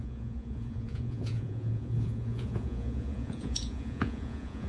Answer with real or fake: fake